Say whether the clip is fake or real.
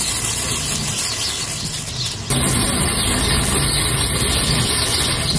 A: real